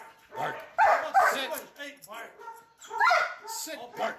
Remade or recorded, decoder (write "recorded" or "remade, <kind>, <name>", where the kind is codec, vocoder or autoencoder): recorded